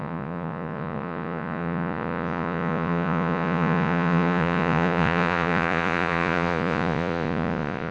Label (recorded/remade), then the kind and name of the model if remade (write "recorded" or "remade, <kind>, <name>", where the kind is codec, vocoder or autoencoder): remade, vocoder, Vocos